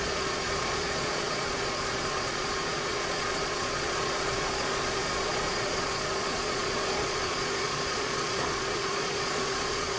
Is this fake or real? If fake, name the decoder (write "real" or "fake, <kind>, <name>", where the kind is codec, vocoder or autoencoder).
fake, vocoder, Vocos